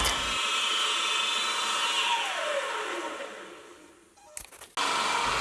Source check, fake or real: real